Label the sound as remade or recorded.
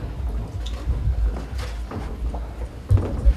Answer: recorded